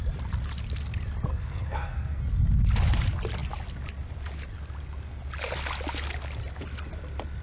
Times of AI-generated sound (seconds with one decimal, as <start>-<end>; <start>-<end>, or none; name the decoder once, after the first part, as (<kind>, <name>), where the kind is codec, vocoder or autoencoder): 1.3-2.2 (codec, SNAC)